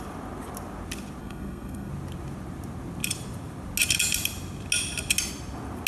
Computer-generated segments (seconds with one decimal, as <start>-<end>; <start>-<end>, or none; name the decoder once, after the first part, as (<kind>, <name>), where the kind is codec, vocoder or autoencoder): 1.2-1.9 (codec, SNAC)